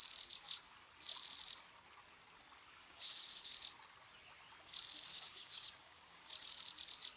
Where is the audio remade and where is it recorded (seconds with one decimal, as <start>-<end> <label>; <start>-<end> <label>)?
0.0-2.8 recorded; 2.8-3.5 remade; 3.5-5.1 recorded; 5.1-6.3 remade; 6.3-7.2 recorded